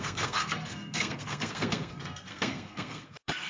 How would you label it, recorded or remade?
remade